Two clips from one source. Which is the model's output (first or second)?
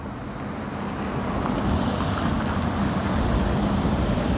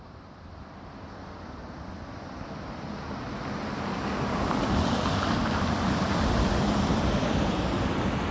second